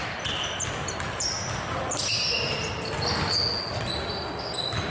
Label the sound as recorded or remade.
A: recorded